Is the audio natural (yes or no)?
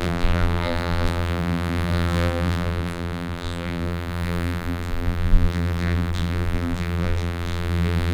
no